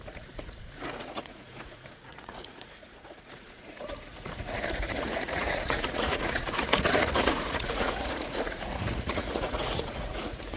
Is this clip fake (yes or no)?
yes